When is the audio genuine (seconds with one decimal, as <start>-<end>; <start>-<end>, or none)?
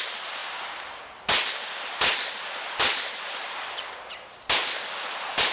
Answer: 0.0-5.5